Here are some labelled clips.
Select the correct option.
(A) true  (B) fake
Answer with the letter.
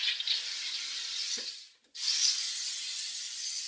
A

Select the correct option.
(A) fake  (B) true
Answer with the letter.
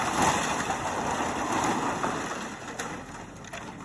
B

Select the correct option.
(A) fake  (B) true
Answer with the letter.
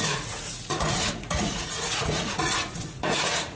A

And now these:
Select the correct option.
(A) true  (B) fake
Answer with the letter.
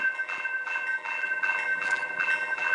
B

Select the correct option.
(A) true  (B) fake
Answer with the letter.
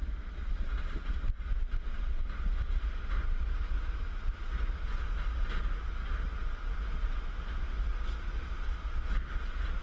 A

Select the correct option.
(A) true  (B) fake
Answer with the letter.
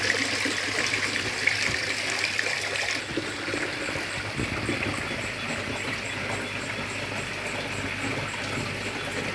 A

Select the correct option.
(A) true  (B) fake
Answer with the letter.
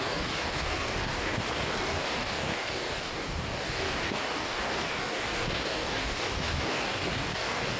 B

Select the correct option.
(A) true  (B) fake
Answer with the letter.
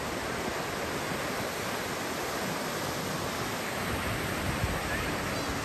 A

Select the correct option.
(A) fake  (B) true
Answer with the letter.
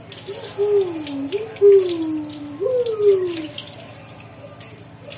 B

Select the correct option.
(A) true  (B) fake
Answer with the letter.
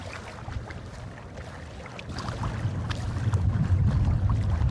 A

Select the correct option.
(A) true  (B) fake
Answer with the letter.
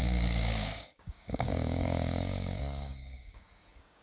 B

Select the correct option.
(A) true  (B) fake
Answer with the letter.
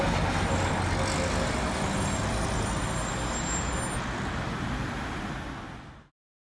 A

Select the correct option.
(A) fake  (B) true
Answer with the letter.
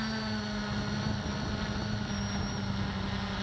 B